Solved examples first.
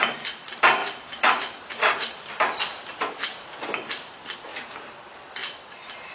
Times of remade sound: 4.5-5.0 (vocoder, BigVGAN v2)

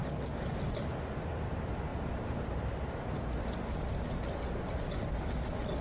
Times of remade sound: 0.8-5.8 (vocoder, BigVGAN v2)

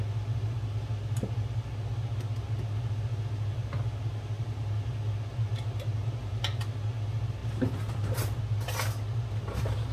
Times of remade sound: 6.0-6.6 (vocoder, BigVGAN v2); 7.4-8.4

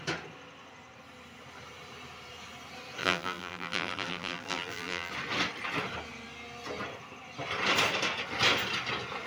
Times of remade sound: 3.0-5.1 (vocoder, BigVGAN v2)